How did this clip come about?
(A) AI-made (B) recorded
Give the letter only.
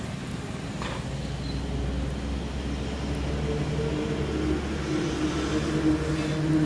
B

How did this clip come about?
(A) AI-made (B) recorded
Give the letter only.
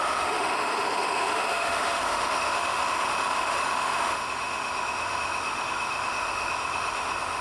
A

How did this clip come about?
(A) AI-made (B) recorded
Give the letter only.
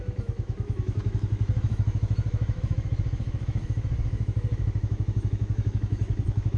A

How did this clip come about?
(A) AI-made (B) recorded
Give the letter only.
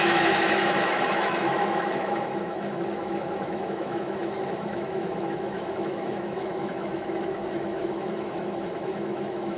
A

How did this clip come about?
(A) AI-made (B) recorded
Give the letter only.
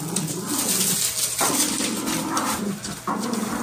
B